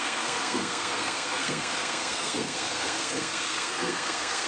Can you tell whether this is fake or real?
fake